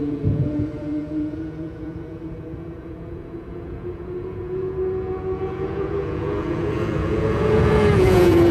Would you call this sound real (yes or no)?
no